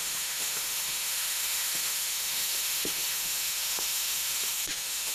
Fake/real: fake